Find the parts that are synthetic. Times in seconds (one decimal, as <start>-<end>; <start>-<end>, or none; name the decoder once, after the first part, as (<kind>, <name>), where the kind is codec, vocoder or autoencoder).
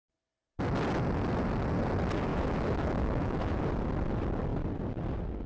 2.3-3.6 (autoencoder, DAC-VAE)